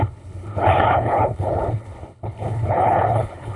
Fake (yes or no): yes